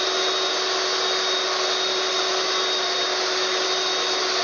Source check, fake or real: real